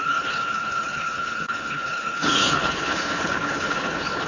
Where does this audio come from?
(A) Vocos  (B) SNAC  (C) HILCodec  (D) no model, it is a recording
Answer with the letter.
C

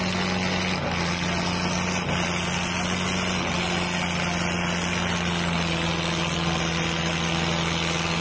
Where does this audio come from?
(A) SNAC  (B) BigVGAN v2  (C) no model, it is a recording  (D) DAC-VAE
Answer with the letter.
C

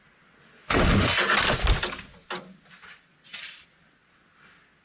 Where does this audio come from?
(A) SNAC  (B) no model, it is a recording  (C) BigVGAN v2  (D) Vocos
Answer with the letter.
B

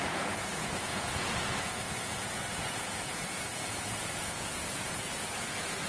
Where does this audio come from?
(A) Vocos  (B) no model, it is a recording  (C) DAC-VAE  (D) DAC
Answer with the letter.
A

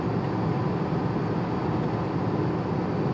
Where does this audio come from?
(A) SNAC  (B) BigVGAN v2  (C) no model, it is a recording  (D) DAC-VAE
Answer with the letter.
C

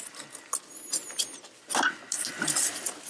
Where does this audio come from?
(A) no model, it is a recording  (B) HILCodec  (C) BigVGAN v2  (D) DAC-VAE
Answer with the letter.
A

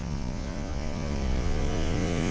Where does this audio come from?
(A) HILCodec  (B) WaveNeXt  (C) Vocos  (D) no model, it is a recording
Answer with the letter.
C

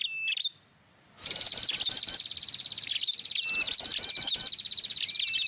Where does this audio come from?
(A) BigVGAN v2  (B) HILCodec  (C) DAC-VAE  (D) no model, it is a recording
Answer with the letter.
D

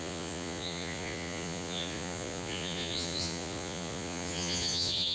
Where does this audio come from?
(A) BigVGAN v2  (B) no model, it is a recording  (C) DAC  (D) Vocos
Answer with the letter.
D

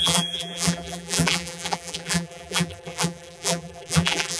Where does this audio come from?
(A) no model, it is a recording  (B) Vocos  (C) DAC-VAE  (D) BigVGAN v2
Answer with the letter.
D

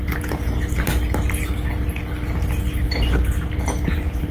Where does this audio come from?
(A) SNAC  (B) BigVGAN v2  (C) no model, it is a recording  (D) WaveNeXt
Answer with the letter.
C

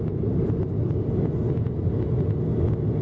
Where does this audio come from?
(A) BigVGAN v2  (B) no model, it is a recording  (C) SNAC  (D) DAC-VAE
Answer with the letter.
B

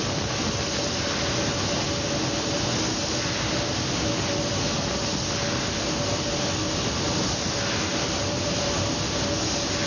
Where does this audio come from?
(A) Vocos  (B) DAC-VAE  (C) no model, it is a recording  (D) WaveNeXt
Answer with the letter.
C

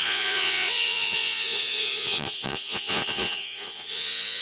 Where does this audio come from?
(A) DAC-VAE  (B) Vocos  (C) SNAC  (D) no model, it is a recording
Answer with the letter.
B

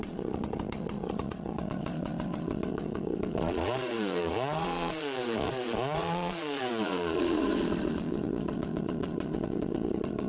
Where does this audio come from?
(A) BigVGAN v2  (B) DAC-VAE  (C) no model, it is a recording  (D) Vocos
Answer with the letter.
D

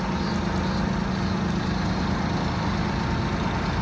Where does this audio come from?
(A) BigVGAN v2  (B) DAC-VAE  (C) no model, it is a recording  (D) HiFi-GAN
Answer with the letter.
C